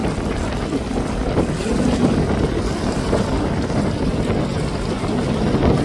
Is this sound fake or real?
real